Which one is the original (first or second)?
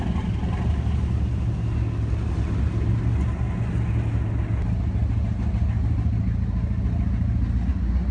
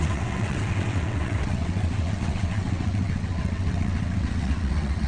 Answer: first